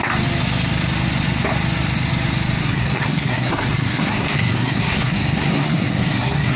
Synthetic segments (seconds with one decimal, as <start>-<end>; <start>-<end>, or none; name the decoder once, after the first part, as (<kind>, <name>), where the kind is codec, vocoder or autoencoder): 2.6-6.6 (codec, SNAC)